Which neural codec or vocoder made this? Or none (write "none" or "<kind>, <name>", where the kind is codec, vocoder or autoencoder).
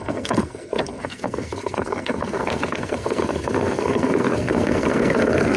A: codec, SNAC